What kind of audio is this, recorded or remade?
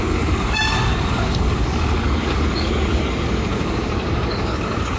remade